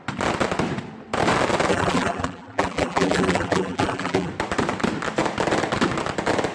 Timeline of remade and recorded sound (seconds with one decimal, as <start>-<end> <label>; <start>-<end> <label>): 0.0-1.7 recorded; 1.7-4.3 remade; 4.3-6.5 recorded